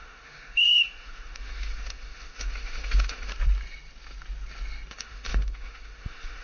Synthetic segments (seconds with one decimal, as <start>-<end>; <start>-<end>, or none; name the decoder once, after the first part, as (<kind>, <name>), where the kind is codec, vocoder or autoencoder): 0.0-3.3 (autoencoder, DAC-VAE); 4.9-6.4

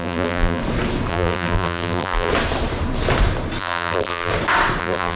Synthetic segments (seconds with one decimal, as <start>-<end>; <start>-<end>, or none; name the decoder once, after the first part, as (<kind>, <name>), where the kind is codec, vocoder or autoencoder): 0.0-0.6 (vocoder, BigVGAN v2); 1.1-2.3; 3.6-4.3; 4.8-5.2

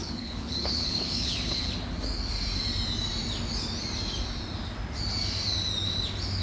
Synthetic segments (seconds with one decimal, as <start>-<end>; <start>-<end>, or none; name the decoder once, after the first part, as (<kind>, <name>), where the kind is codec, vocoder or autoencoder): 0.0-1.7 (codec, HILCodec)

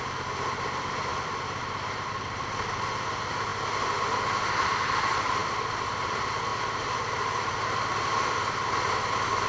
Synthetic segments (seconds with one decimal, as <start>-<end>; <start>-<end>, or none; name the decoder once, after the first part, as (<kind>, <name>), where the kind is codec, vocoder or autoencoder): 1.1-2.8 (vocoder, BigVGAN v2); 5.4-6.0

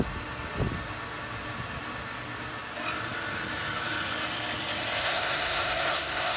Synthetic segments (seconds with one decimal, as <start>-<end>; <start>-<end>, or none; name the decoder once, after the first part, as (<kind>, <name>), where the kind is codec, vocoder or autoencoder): 5.0-6.4 (codec, SNAC)